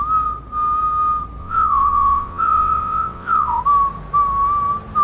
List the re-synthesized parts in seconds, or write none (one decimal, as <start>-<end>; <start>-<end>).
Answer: 1.4-3.6